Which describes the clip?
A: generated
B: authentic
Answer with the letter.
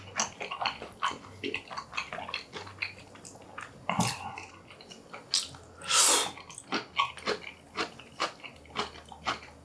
B